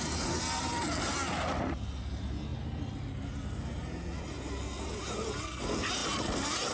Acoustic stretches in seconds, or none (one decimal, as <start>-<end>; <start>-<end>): 0.0-6.7